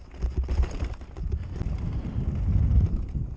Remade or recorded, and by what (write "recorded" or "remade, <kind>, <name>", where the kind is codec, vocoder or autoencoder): recorded